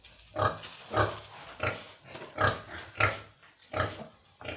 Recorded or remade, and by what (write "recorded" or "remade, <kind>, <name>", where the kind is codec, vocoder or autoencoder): recorded